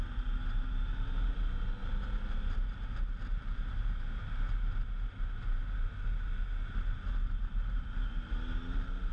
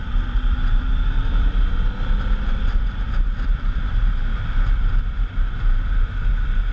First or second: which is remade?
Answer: second